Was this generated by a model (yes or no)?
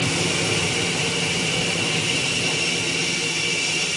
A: no